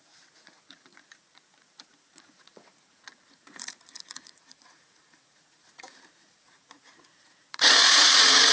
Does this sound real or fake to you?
fake